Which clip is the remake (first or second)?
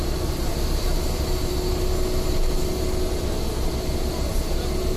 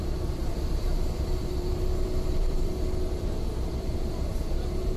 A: second